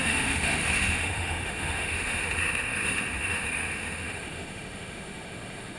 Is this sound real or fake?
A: fake